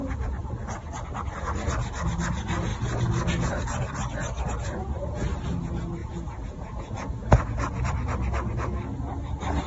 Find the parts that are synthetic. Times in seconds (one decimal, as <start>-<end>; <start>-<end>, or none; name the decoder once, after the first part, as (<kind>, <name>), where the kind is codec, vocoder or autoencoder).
0.0-0.5 (vocoder, Vocos); 6.0-7.9